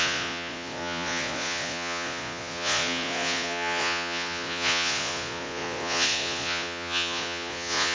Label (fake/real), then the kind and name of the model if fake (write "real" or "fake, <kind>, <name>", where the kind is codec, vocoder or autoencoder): fake, vocoder, Vocos